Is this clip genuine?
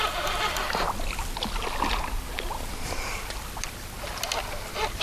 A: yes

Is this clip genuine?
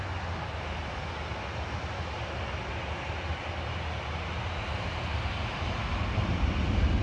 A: yes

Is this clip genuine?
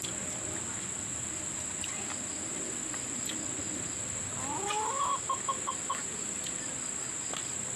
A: yes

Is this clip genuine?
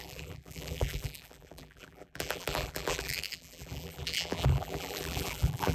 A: no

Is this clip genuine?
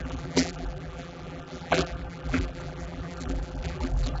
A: no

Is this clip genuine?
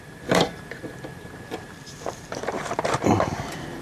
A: no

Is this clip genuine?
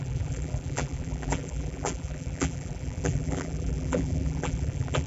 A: no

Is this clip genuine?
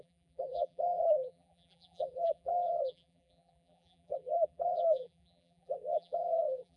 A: no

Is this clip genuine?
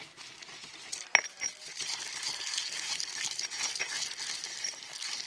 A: yes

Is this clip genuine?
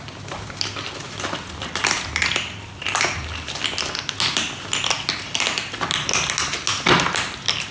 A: yes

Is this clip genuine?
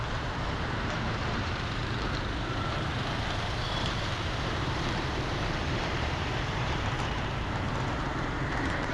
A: no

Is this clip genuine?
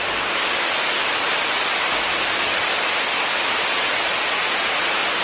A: yes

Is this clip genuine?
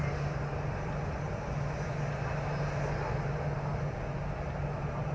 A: yes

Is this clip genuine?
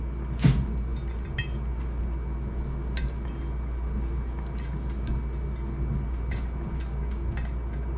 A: yes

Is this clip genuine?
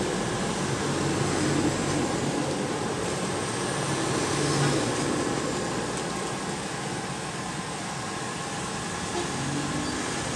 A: yes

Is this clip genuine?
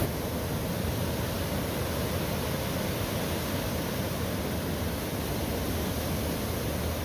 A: yes